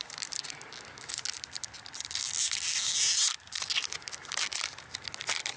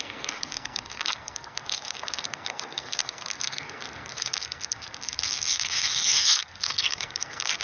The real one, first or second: first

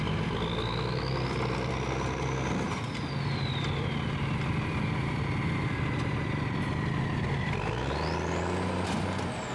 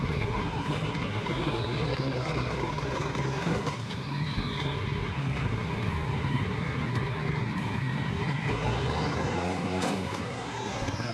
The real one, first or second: first